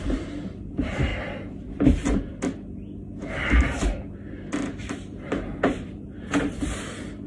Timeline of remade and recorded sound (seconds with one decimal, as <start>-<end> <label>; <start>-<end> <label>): 0.0-1.1 remade; 1.1-4.8 recorded; 4.8-7.3 remade